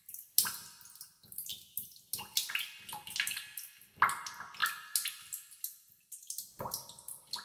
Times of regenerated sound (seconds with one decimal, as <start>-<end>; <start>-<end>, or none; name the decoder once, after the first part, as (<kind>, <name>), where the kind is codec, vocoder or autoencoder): none